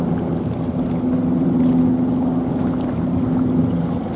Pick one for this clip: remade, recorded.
recorded